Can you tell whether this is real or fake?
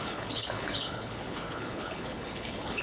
fake